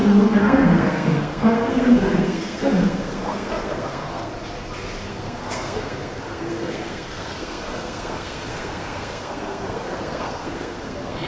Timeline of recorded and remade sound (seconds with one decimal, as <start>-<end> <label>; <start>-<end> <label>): 0.0-4.3 remade; 4.3-5.1 recorded; 5.1-11.3 remade